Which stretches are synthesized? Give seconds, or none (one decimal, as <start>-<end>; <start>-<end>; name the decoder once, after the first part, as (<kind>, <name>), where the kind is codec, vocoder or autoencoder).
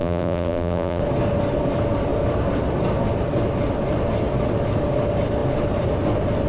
0.0-1.0 (vocoder, BigVGAN v2)